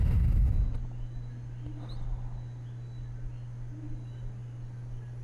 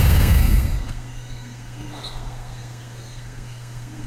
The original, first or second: first